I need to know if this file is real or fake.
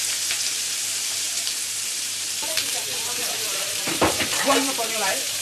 fake